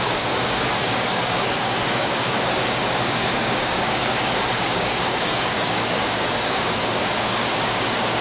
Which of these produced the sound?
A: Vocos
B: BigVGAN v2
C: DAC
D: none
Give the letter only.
C